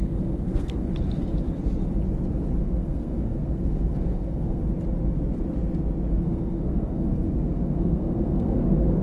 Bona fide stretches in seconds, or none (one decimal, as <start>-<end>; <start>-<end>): 0.9-2.6; 4.6-6.2